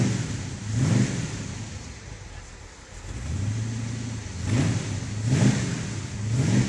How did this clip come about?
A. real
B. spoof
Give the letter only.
A